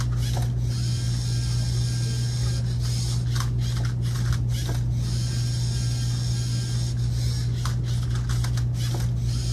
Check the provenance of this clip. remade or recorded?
recorded